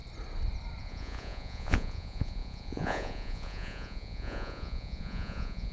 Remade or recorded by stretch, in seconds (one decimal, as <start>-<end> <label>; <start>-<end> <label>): 0.0-0.8 recorded; 0.8-5.7 remade